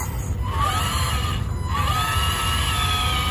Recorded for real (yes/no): yes